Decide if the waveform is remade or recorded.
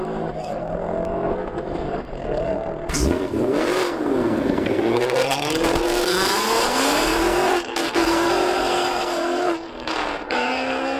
remade